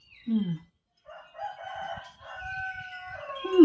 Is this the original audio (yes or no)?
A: yes